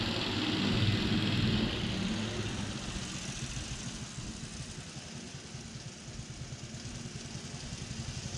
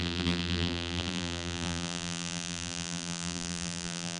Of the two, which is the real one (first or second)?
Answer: first